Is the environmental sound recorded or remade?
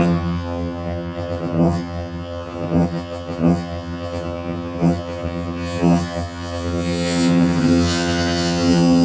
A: remade